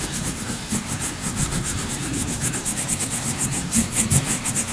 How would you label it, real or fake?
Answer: fake